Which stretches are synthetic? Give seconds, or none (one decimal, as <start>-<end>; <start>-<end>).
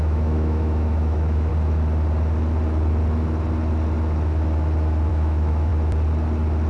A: 0.0-1.5; 5.1-5.7